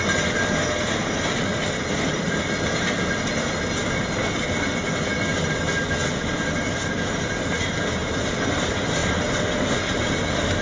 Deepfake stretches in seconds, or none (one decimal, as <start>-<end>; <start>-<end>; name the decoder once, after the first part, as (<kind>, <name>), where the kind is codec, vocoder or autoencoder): none